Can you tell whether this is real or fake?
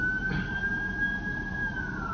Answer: real